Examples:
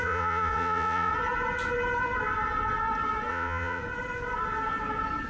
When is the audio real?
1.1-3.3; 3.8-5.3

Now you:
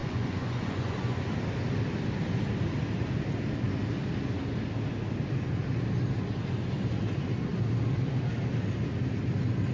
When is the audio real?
1.2-9.7

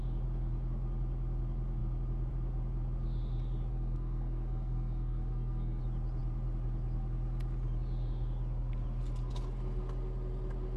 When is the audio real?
0.0-3.7; 5.8-10.8

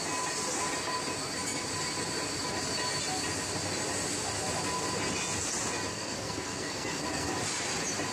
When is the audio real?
0.0-5.9; 7.3-8.1